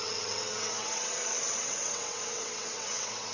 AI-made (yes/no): yes